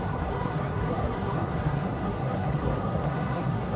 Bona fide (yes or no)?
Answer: no